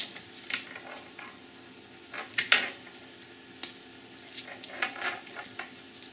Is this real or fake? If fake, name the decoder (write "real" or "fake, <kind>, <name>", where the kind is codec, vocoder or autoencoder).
real